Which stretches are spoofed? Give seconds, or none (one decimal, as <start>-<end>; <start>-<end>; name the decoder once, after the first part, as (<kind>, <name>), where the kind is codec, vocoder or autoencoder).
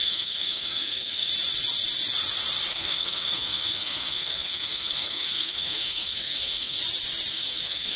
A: 0.0-1.3 (codec, SNAC); 2.7-6.8; 7.3-8.0